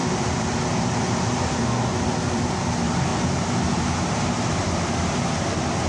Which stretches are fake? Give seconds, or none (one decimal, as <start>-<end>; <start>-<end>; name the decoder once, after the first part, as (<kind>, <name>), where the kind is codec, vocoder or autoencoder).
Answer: 1.9-2.4 (vocoder, BigVGAN v2)